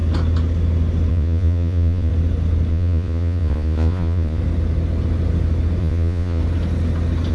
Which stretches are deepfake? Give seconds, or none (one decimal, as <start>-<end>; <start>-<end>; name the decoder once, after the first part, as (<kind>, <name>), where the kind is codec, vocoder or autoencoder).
1.1-2.1 (vocoder, Vocos); 2.7-4.4; 5.8-6.4